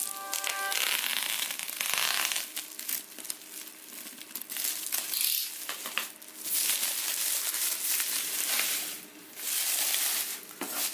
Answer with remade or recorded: recorded